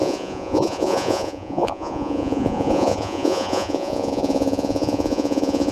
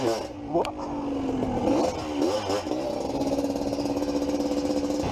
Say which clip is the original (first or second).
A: second